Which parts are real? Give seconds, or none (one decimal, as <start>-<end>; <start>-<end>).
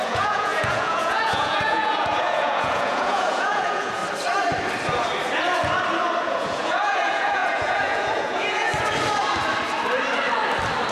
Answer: 4.0-6.2; 8.7-10.9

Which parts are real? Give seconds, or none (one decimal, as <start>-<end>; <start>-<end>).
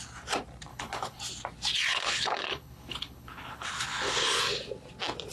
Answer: 0.0-0.7; 1.2-1.9; 4.4-5.3